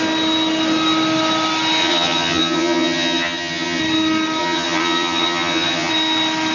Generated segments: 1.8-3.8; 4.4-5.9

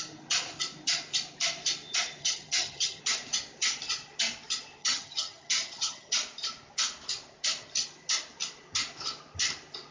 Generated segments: 2.2-3.0; 4.8-6.1

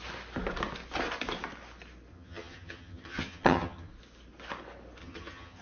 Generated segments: 2.1-3.9; 5.0-5.6

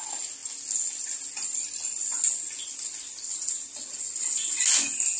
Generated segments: none

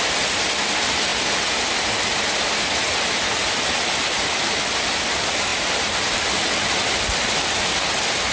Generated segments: none

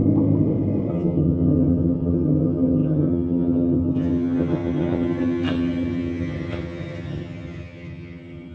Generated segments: 0.9-8.5

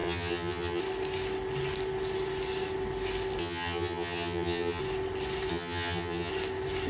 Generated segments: 0.0-0.8; 3.4-4.8; 5.5-6.3